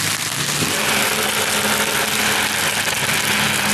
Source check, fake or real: real